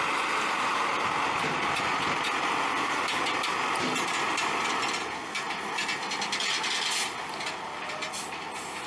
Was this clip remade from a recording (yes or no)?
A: no